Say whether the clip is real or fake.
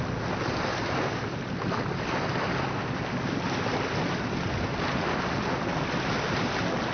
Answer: real